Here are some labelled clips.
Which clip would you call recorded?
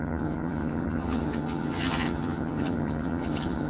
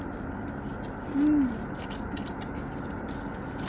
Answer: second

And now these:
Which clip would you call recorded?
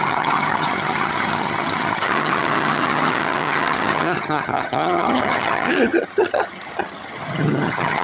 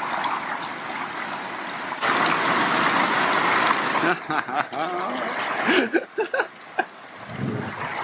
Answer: second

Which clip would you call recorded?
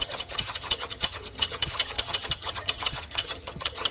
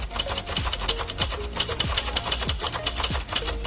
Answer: second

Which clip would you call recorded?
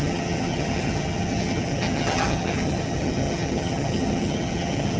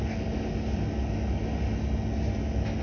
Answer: second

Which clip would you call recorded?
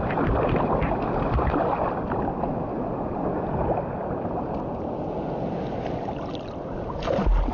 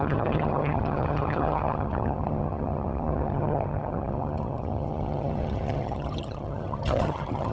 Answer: first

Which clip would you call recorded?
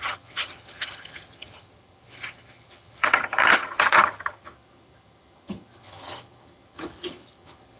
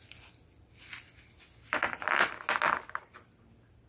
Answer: second